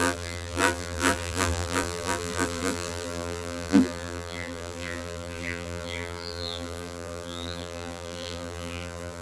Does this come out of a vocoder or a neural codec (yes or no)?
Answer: yes